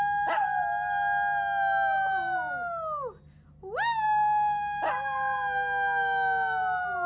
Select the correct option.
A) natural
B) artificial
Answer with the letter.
A